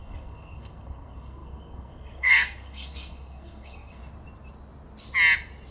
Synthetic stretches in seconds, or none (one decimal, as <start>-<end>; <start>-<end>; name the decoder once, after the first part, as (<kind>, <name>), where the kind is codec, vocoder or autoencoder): 0.0-4.0 (codec, SNAC)